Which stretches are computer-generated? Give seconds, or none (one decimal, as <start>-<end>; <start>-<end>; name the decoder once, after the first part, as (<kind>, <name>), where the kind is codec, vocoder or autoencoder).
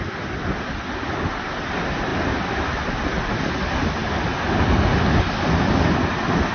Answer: none